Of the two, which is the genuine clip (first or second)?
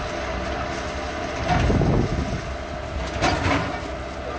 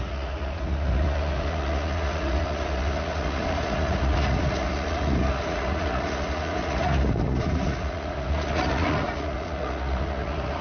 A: first